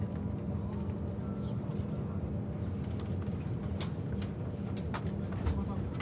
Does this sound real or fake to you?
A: real